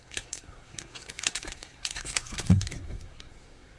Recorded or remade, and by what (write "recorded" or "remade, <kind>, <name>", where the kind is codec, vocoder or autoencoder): remade, codec, SNAC